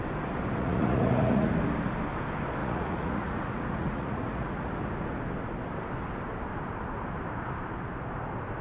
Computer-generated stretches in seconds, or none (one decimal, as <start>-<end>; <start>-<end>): 0.6-1.5; 2.6-4.7